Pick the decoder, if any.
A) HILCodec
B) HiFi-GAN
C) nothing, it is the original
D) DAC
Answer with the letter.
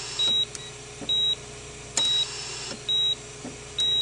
C